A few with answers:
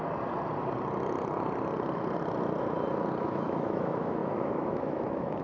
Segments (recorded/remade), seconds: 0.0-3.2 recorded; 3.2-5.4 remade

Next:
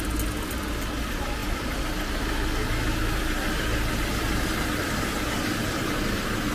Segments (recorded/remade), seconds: 0.0-6.5 recorded